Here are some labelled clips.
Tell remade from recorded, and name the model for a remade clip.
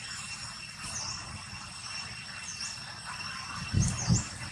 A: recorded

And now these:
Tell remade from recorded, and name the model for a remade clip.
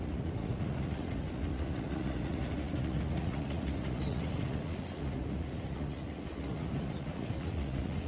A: remade, vocoder, Vocos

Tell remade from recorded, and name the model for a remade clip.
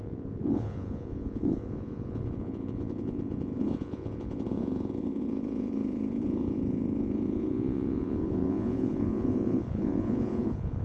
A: remade, vocoder, Vocos